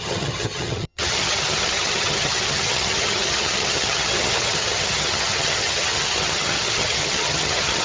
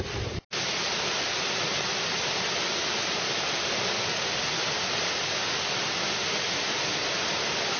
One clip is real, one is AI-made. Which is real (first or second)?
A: second